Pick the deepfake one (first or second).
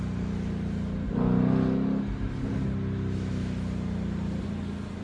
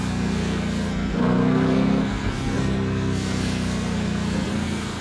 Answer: second